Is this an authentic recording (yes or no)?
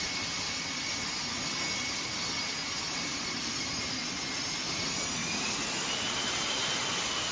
yes